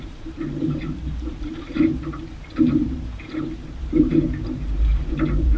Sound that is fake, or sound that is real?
fake